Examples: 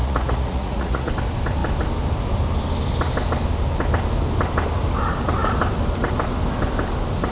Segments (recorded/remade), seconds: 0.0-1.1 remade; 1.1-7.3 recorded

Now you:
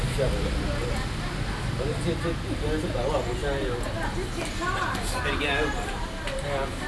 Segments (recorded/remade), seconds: 0.0-6.9 recorded

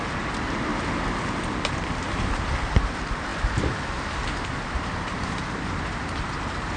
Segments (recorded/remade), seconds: 0.0-0.7 remade; 0.7-2.1 recorded; 2.1-6.8 remade